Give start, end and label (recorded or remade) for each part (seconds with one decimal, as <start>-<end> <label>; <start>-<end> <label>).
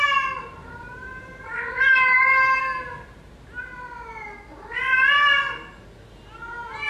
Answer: 0.0-0.6 recorded; 0.6-3.3 remade; 3.3-6.9 recorded